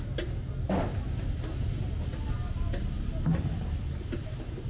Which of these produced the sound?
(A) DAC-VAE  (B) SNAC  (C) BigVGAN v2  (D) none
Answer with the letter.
D